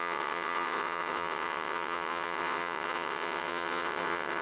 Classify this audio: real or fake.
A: fake